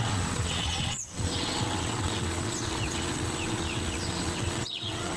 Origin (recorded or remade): remade